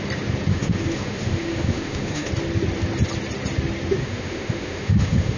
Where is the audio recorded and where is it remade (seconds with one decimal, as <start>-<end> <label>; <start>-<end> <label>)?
0.0-0.5 recorded; 0.5-2.3 remade; 2.3-4.0 recorded; 4.0-5.4 remade